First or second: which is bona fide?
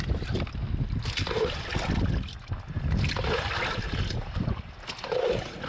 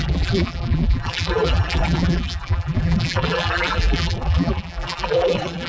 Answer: first